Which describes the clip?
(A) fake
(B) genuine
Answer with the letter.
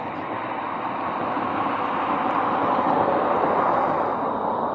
B